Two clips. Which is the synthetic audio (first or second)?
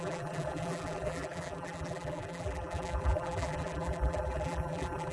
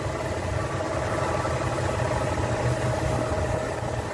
first